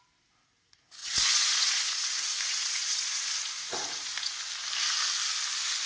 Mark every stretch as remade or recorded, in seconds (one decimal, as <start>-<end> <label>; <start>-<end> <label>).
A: 0.0-1.0 recorded; 1.0-4.4 remade; 4.4-5.9 recorded